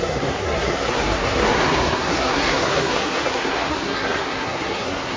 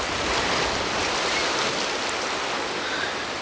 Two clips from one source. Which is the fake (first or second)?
first